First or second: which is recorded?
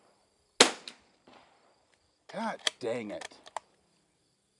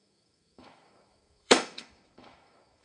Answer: first